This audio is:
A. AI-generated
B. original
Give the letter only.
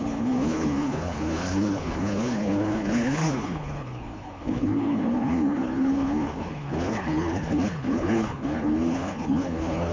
A